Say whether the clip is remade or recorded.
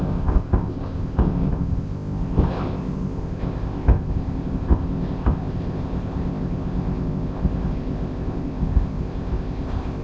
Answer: remade